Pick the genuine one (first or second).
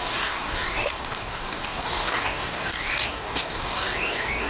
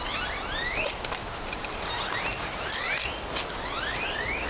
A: second